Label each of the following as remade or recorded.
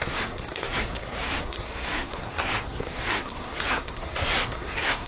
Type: remade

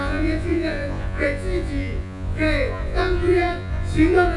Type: remade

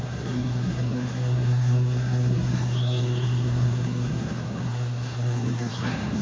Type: remade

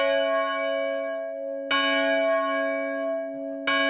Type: recorded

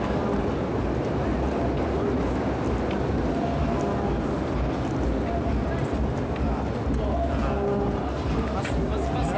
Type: recorded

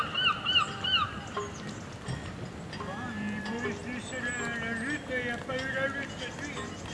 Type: recorded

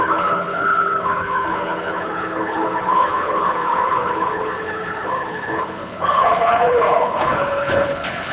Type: remade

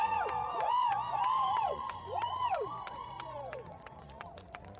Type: remade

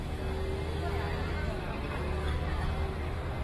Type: recorded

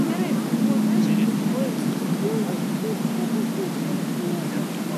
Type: recorded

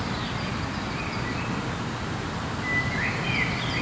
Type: recorded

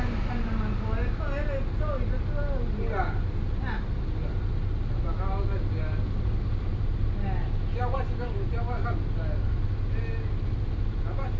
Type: recorded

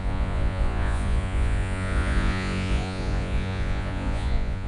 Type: remade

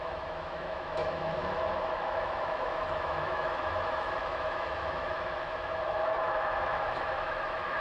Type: remade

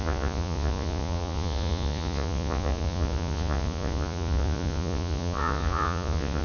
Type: remade